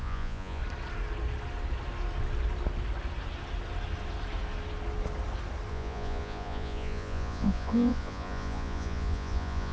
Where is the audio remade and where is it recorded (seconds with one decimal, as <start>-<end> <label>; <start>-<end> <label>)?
0.0-0.6 remade; 0.6-5.7 recorded; 5.7-9.7 remade